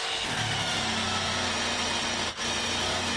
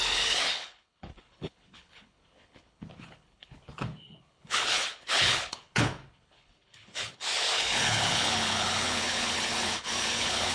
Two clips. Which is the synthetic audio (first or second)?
second